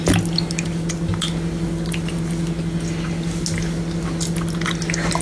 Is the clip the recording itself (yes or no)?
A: yes